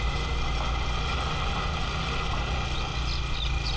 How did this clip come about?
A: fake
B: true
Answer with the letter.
B